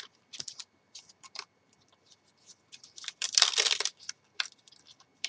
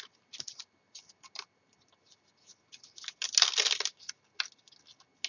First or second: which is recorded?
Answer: second